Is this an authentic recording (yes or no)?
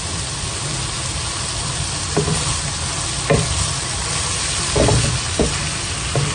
yes